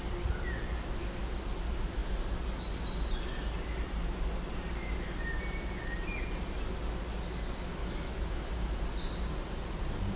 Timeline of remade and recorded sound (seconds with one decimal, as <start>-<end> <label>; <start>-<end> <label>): 0.0-7.8 recorded; 7.8-8.8 remade; 8.8-10.2 recorded